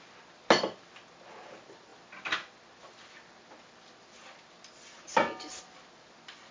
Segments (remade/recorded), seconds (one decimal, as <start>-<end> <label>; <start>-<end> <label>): 0.0-6.5 recorded